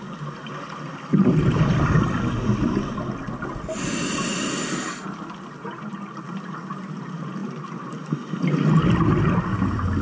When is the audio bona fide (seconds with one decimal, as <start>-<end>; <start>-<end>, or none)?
0.0-10.0